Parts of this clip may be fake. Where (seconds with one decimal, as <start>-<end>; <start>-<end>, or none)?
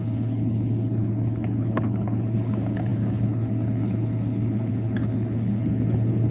0.0-6.3